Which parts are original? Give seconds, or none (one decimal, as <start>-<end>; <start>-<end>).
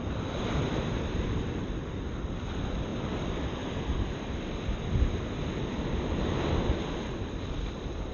2.9-8.1